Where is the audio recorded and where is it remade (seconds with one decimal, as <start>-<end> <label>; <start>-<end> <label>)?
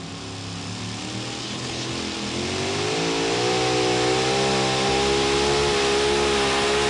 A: 0.0-1.4 recorded; 1.4-1.9 remade; 1.9-6.9 recorded